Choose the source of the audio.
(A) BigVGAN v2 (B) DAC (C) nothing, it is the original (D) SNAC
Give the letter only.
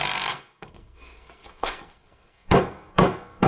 D